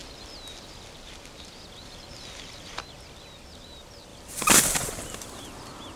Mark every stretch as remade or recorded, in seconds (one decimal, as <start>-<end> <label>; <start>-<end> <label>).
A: 0.0-4.1 recorded; 4.1-6.0 remade